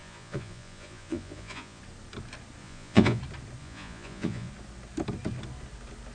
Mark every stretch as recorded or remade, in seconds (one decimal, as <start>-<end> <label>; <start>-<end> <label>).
0.0-1.8 remade; 1.8-2.6 recorded; 2.6-3.2 remade; 3.2-3.6 recorded; 3.6-4.5 remade; 4.5-6.1 recorded